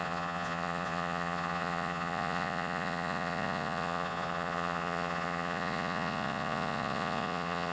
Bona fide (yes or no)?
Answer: no